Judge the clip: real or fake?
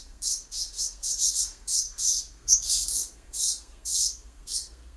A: fake